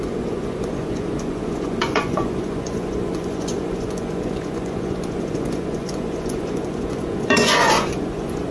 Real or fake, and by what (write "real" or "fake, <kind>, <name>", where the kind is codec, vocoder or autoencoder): fake, vocoder, Vocos